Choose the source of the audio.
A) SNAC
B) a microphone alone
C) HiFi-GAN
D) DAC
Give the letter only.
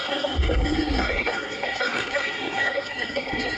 A